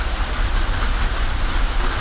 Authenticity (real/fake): real